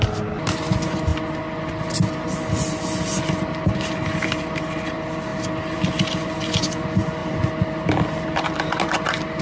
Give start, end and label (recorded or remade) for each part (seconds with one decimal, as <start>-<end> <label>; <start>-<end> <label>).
0.0-9.4 recorded